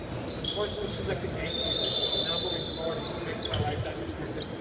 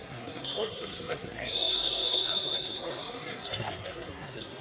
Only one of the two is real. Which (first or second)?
first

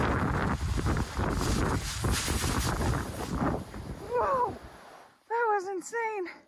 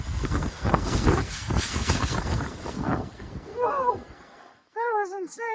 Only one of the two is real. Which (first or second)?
first